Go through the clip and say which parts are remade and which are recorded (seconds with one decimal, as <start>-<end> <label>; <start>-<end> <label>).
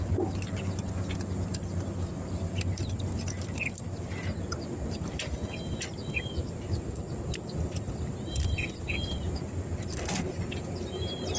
0.0-11.4 recorded